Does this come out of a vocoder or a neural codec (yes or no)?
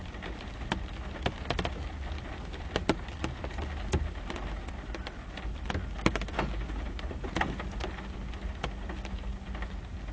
no